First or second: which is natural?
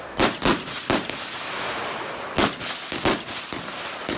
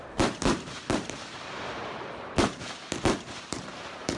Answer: first